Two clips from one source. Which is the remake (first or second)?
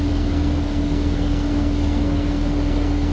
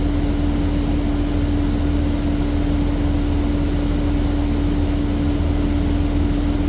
first